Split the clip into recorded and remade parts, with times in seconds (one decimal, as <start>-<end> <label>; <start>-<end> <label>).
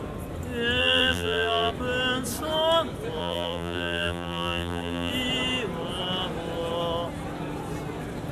0.0-0.8 recorded; 0.8-1.7 remade; 1.7-3.2 recorded; 3.2-5.1 remade; 5.1-8.3 recorded